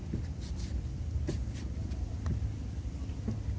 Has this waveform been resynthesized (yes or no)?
no